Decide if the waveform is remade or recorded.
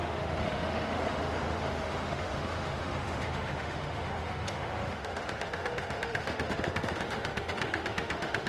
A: remade